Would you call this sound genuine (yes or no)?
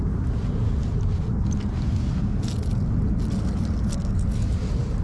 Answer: yes